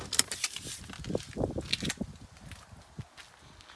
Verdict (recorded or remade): recorded